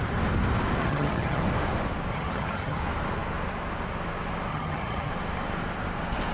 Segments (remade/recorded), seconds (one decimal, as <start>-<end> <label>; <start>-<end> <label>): 0.0-0.8 recorded; 0.8-1.4 remade; 1.4-2.1 recorded; 2.1-2.8 remade; 2.8-4.5 recorded; 4.5-5.1 remade; 5.1-6.3 recorded